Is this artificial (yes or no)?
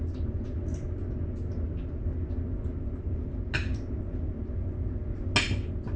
no